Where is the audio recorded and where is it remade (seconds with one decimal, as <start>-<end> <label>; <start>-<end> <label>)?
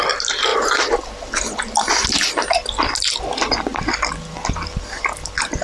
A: 0.0-0.5 recorded; 0.5-1.9 remade; 1.9-5.6 recorded